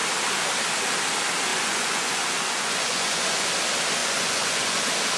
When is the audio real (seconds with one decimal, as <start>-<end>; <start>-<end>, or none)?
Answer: 0.0-1.5; 3.5-4.0; 4.8-5.2